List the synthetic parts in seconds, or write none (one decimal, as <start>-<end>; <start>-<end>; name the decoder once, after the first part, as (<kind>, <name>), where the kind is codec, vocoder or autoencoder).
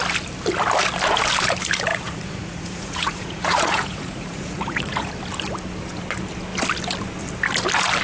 1.9-5.1 (vocoder, Vocos)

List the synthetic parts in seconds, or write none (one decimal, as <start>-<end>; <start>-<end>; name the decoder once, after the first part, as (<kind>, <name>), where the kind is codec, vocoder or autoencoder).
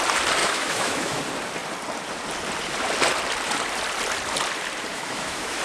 0.4-1.2 (autoencoder, DAC-VAE); 4.9-5.6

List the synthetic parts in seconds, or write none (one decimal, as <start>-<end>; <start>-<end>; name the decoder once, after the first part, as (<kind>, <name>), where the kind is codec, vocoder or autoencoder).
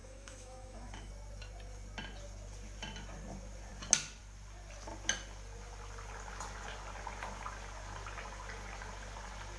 0.0-1.1 (autoencoder, DAC-VAE)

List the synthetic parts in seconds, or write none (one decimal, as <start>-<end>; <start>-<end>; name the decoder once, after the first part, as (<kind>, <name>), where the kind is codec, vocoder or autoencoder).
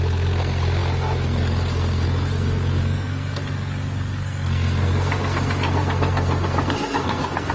0.0-7.5 (codec, SNAC)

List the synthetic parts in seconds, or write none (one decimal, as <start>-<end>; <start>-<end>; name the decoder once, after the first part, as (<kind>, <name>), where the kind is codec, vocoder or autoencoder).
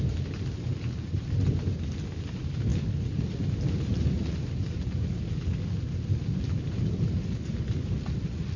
none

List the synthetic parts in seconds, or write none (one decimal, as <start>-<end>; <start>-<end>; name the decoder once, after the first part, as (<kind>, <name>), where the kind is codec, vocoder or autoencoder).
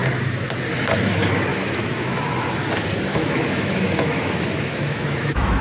0.0-0.5 (autoencoder, DAC-VAE); 1.5-2.2; 3.1-5.6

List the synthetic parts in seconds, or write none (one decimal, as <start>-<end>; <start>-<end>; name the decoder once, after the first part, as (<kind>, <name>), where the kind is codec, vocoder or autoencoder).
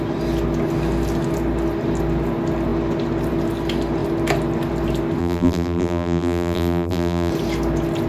5.2-7.3 (vocoder, BigVGAN v2)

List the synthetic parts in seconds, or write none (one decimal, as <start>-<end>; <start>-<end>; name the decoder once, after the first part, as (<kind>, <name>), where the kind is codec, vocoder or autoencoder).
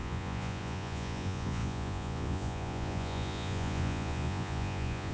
0.0-5.1 (vocoder, Vocos)